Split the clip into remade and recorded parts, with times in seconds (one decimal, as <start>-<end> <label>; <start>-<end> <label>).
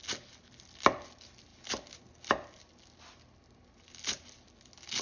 0.0-5.0 recorded